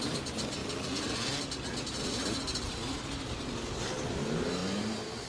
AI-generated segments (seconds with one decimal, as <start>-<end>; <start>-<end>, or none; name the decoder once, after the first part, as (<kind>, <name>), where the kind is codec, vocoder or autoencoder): none